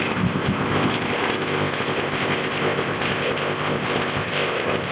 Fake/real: fake